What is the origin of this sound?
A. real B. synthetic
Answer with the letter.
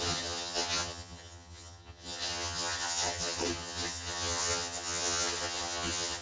B